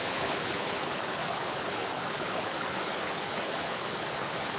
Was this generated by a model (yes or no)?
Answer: yes